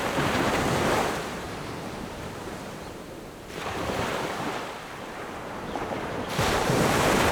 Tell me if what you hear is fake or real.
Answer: fake